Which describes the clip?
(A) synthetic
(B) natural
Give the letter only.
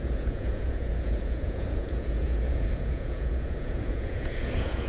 A